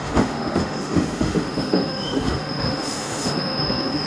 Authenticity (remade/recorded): remade